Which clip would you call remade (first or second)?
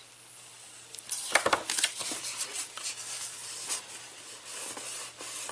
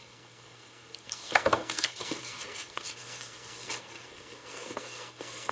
second